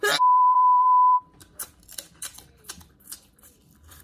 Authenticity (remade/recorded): remade